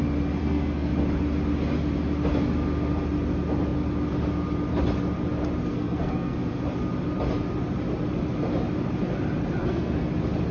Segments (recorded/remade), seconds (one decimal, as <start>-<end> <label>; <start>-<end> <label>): 0.0-0.4 recorded; 0.4-0.9 remade; 0.9-5.7 recorded; 5.7-6.6 remade; 6.6-9.6 recorded; 9.6-10.1 remade; 10.1-10.5 recorded